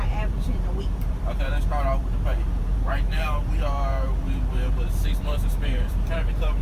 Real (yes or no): no